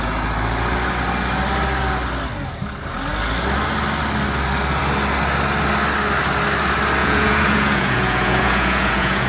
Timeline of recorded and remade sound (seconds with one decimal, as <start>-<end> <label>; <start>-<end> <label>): 0.0-7.0 recorded; 7.0-9.3 remade